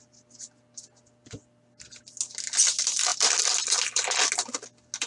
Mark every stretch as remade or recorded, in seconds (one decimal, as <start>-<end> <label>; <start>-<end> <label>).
0.0-5.1 recorded